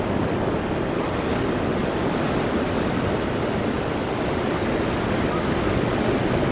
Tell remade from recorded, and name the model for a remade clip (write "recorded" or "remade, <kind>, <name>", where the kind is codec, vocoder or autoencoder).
recorded